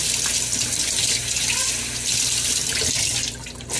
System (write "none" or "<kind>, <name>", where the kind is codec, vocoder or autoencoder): none